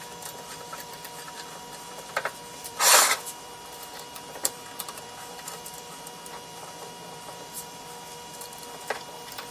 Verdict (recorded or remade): remade